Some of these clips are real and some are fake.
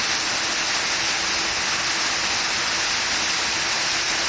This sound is real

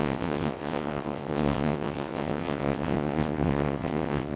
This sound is fake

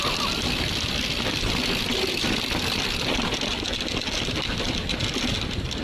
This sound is real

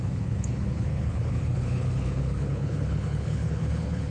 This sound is fake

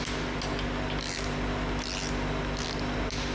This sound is real